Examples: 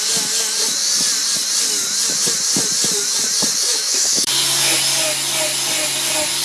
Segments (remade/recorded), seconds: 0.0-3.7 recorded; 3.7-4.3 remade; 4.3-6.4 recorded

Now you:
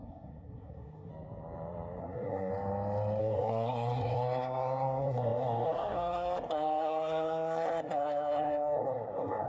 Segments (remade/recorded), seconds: 0.0-1.1 remade; 1.1-2.0 recorded; 2.0-2.5 remade; 2.5-3.2 recorded; 3.2-9.5 remade

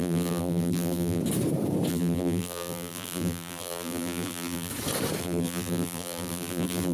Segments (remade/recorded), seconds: 0.0-1.2 remade; 1.2-1.9 recorded; 1.9-4.7 remade; 4.7-5.2 recorded; 5.2-6.9 remade